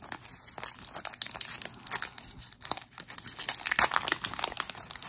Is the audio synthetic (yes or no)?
no